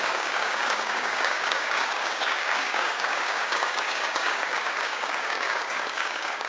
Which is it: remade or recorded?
remade